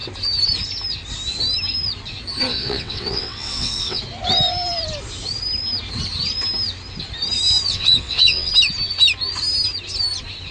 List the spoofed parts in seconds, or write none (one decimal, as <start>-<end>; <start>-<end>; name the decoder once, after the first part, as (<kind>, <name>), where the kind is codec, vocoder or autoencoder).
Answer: 2.5-4.0 (vocoder, WaveNeXt); 7.7-8.5